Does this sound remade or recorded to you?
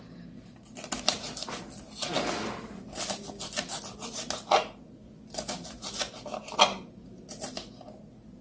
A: recorded